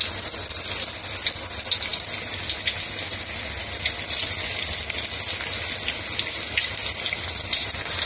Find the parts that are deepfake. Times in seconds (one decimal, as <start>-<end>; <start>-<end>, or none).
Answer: none